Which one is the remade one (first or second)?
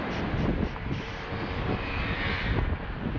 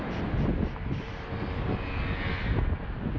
first